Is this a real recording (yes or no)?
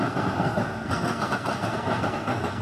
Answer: no